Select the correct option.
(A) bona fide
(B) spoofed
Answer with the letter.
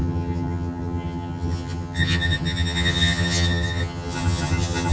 B